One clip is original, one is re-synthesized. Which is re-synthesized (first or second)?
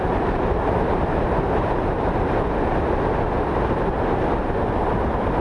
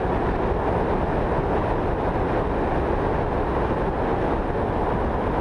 first